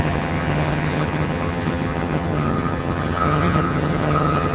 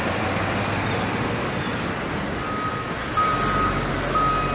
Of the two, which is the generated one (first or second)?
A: first